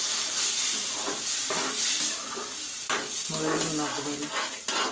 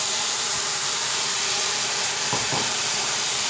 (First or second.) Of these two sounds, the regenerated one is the second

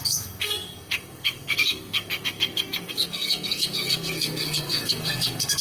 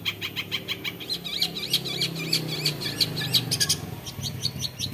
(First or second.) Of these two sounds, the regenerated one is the first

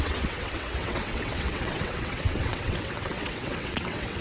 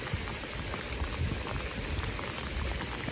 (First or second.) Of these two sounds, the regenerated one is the first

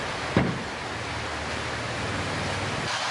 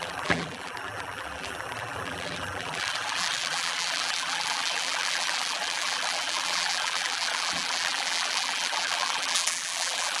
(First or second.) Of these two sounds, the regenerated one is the second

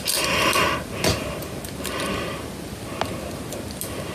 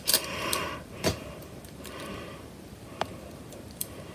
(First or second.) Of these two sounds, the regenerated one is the second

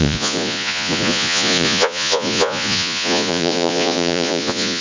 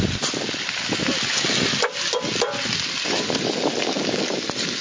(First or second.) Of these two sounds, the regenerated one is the first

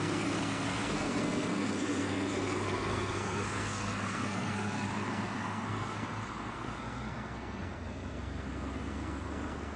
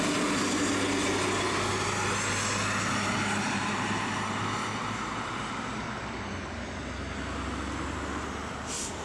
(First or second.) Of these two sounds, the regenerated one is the first